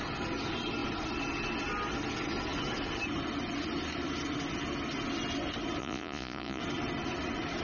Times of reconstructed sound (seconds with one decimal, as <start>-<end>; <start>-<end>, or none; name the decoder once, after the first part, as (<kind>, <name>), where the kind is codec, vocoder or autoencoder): 5.8-6.6 (vocoder, Vocos)